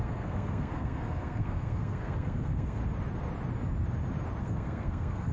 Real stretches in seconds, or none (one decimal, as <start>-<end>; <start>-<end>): 2.8-4.4